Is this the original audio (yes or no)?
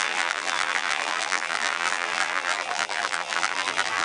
no